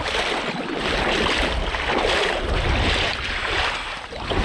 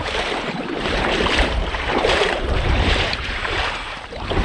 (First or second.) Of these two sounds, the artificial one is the second